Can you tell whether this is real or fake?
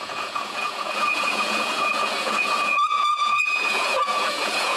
fake